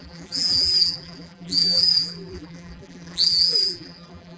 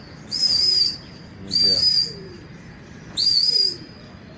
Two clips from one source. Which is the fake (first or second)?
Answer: first